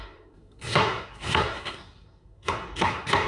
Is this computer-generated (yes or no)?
yes